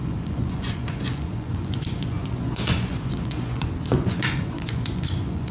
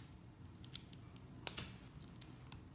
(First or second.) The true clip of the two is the second